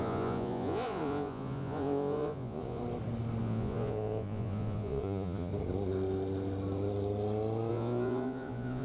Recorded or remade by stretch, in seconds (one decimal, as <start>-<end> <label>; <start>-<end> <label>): 0.0-2.8 remade; 2.8-3.4 recorded; 3.4-5.5 remade; 5.5-7.7 recorded; 7.7-8.8 remade